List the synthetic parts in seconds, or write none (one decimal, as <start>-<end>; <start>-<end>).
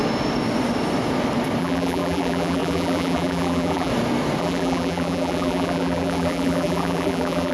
1.6-3.9; 4.4-7.5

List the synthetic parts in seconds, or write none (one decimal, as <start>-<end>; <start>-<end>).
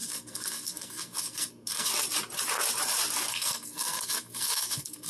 0.0-1.9; 3.3-5.1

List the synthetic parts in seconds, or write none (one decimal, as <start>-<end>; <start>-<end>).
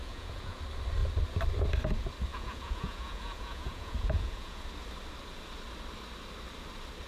0.0-0.6; 2.3-4.6